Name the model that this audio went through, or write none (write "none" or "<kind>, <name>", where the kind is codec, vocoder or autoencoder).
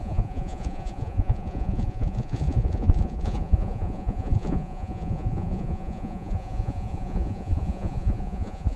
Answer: vocoder, Vocos